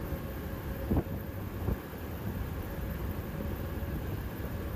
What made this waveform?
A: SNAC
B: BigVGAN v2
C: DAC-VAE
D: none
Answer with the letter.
B